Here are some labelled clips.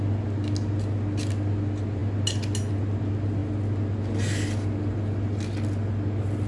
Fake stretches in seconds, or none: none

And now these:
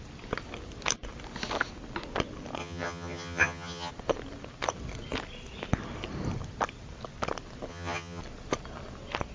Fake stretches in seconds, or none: 2.6-3.9 (vocoder, HiFi-GAN); 7.7-8.2

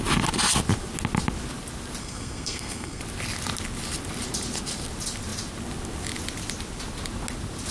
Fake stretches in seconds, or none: 2.0-3.0 (codec, SNAC)

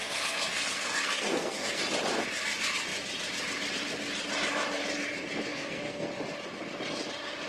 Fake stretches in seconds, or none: 0.0-1.8 (codec, SNAC); 5.5-6.1

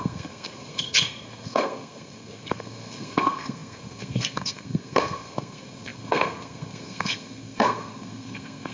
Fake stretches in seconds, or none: 0.0-8.7 (codec, SNAC)

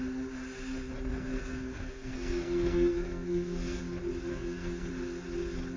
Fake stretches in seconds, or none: 1.1-3.8 (codec, SNAC); 4.3-4.9

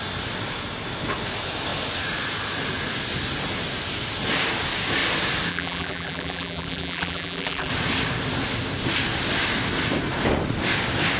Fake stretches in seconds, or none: 5.5-7.7 (vocoder, BigVGAN v2)